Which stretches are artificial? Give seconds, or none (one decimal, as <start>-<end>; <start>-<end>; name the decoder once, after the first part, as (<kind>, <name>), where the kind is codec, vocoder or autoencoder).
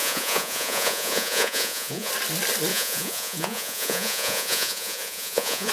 0.0-2.1 (vocoder, Vocos); 2.7-5.7